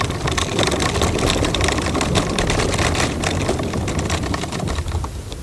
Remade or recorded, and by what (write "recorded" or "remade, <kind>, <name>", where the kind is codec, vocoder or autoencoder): recorded